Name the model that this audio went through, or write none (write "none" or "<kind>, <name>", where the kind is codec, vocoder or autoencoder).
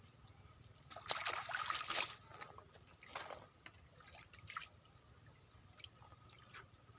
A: none